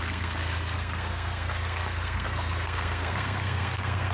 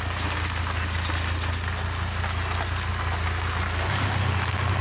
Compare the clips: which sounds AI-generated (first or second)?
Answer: first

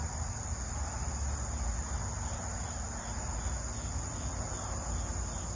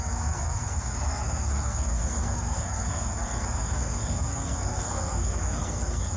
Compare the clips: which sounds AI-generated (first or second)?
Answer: second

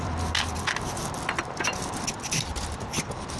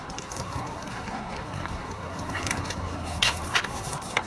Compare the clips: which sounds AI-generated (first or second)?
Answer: second